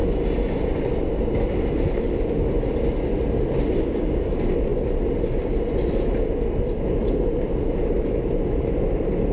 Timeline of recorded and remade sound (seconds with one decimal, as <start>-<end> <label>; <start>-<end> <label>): 0.0-3.8 recorded; 3.8-4.3 remade; 4.3-9.3 recorded